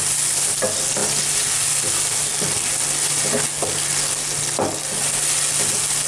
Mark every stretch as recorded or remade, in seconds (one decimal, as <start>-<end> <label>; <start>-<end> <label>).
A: 0.0-6.1 recorded

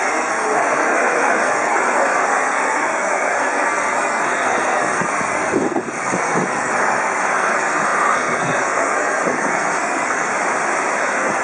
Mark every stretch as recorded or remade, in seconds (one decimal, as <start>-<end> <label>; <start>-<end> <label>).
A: 0.0-10.3 remade; 10.3-11.0 recorded; 11.0-11.4 remade

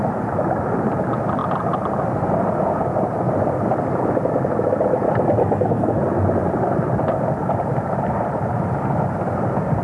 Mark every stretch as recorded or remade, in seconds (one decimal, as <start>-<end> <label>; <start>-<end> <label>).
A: 0.0-5.4 recorded; 5.4-6.0 remade; 6.0-9.8 recorded

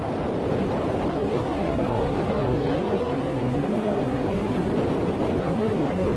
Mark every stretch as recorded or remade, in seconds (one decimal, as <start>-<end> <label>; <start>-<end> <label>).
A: 0.0-1.1 recorded; 1.1-4.7 remade; 4.7-5.4 recorded; 5.4-6.2 remade